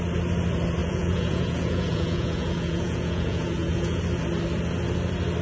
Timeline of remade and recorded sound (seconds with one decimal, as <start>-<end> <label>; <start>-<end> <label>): 0.0-0.8 recorded; 0.8-4.0 remade; 4.0-5.4 recorded